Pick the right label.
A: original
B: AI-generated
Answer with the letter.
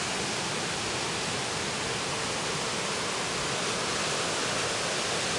A